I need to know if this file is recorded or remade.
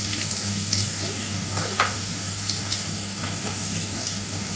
remade